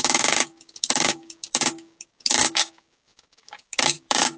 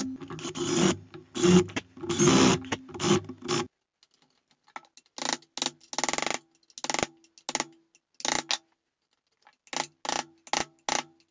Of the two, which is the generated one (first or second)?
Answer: first